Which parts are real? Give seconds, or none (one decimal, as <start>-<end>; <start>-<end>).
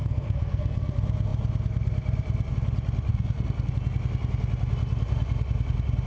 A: 0.9-3.1; 3.7-6.1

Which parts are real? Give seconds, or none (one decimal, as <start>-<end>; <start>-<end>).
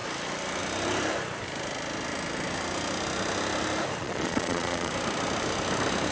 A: 0.0-4.0; 4.9-6.1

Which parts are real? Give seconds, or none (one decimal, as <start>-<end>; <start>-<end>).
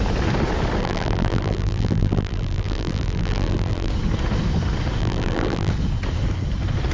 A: 0.0-0.8; 3.9-5.0; 5.7-6.9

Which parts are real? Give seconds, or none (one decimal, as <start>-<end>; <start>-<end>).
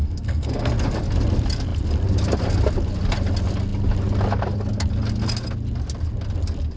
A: 0.7-6.8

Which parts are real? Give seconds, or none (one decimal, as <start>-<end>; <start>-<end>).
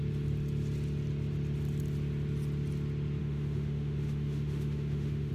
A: 0.0-3.2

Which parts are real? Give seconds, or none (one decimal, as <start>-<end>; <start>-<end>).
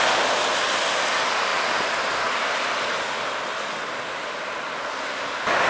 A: 0.0-5.7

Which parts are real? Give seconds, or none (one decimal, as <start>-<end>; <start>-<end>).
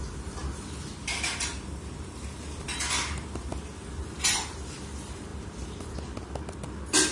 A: 0.0-7.1